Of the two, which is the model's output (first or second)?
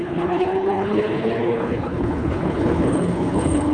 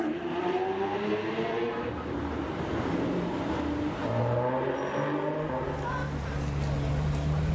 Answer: first